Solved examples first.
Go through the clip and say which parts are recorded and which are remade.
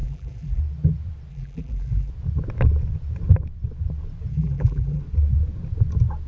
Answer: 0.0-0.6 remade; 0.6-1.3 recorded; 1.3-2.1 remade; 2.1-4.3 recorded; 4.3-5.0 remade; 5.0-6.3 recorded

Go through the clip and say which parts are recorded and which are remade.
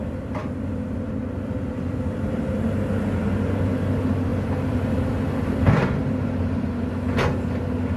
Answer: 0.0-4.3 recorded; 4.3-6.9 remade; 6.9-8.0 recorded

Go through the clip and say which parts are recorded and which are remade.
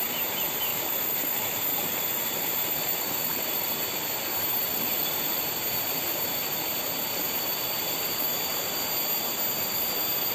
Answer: 0.0-0.7 recorded; 0.7-3.7 remade; 3.7-4.7 recorded; 4.7-5.4 remade; 5.4-10.3 recorded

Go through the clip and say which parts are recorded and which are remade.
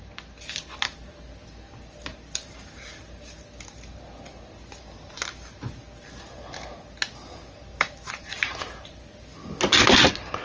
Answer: 0.0-7.7 recorded; 7.7-8.6 remade; 8.6-10.4 recorded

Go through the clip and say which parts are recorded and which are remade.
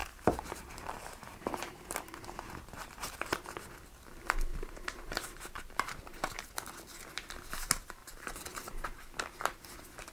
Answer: 0.0-3.4 remade; 3.4-4.5 recorded; 4.5-6.5 remade; 6.5-8.0 recorded; 8.0-9.0 remade; 9.0-10.1 recorded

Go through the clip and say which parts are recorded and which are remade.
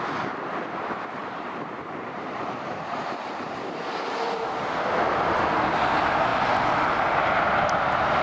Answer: 0.0-1.2 recorded; 1.2-3.8 remade; 3.8-8.2 recorded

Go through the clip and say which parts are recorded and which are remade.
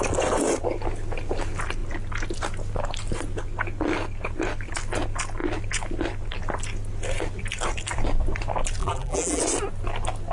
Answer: 0.0-8.8 recorded; 8.8-9.4 remade; 9.4-10.3 recorded